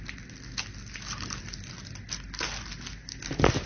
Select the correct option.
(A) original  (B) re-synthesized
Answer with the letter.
A